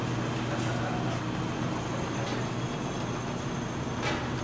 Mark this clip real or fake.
real